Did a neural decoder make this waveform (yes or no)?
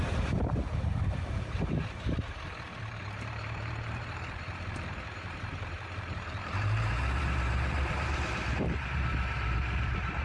yes